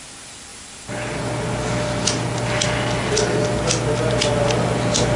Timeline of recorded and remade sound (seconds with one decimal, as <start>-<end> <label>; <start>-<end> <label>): 0.0-5.2 recorded